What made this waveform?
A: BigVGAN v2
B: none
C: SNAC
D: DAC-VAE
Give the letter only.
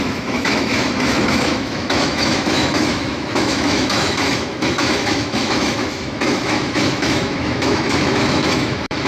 D